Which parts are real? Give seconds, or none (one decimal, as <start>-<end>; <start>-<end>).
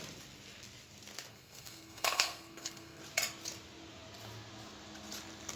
0.0-1.3; 3.0-5.6